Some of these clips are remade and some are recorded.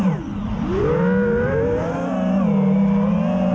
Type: recorded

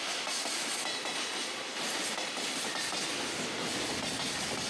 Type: recorded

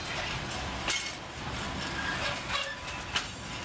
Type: recorded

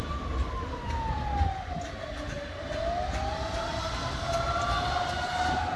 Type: recorded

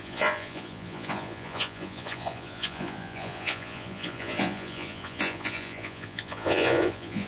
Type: remade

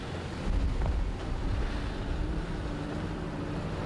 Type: recorded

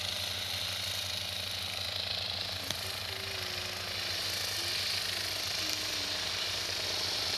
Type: recorded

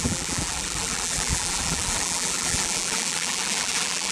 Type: remade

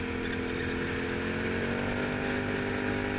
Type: recorded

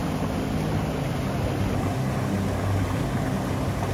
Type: recorded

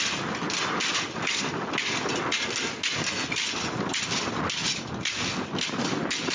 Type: recorded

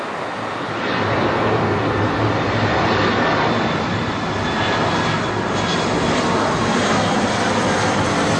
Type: recorded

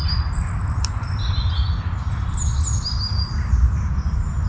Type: recorded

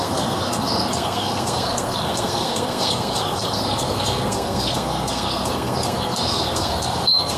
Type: remade